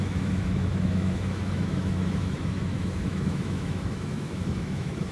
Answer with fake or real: fake